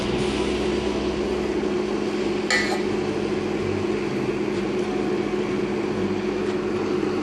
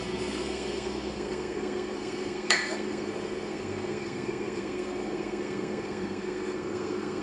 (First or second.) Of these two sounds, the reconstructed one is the second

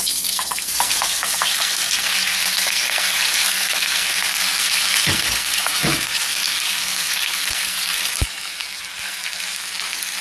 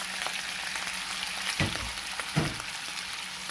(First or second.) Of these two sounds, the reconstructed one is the first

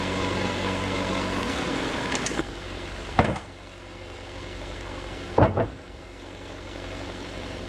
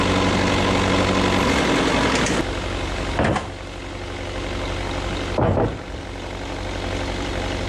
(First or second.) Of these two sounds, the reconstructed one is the first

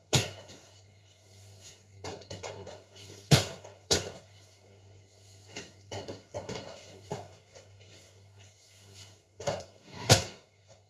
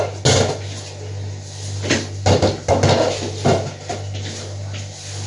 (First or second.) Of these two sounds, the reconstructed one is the first